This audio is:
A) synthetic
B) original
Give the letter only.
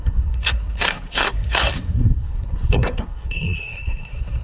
A